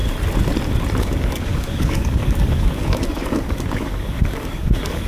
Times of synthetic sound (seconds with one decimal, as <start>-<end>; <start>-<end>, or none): 1.0-5.1